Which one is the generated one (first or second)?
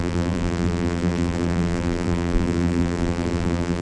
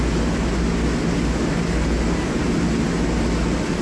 first